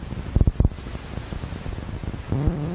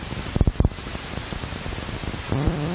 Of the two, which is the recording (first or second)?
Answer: first